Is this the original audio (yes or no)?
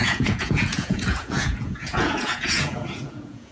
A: no